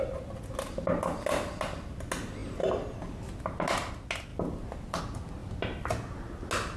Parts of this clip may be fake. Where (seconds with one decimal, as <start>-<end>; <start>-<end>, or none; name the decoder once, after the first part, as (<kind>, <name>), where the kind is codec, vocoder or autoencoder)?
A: none